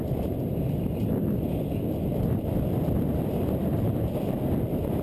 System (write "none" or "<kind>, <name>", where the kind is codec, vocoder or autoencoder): vocoder, BigVGAN v2